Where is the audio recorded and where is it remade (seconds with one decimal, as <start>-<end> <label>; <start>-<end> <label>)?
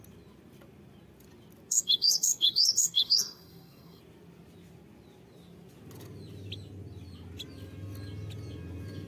0.0-1.7 recorded; 1.7-4.0 remade; 4.0-9.1 recorded